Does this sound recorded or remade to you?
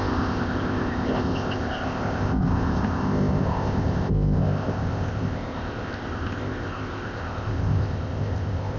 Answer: remade